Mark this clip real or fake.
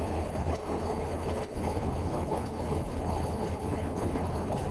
fake